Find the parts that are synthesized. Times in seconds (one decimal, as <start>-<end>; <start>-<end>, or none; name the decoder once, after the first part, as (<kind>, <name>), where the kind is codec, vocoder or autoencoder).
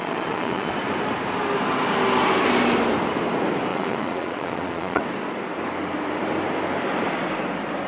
0.0-0.7 (vocoder, Vocos); 3.7-5.0